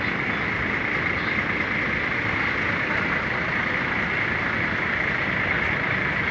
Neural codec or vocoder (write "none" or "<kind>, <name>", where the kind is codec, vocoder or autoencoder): none